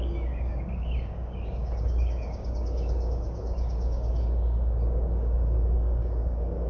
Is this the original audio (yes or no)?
no